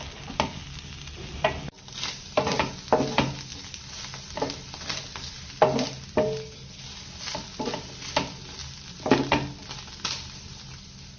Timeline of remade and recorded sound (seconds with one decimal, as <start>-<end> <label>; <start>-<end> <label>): 0.0-11.2 recorded